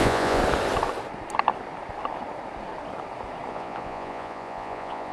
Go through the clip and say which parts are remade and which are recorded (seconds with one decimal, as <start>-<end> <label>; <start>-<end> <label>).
0.0-0.4 remade; 0.4-3.5 recorded; 3.5-5.1 remade

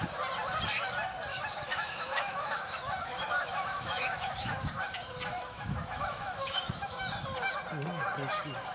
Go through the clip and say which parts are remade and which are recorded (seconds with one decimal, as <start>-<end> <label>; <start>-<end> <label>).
0.0-1.3 recorded; 1.3-4.7 remade; 4.7-5.2 recorded; 5.2-7.0 remade; 7.0-8.7 recorded